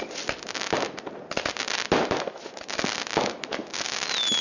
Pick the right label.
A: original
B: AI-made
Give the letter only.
A